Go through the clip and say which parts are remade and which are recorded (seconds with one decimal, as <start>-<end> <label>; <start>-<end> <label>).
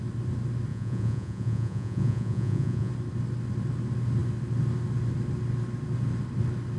0.0-0.7 recorded; 0.7-2.9 remade; 2.9-6.8 recorded